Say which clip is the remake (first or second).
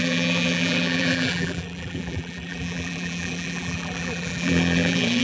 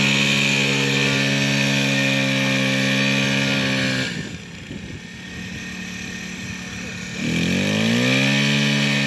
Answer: first